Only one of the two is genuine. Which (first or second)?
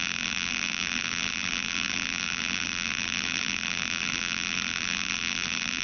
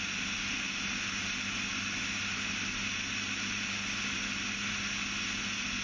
second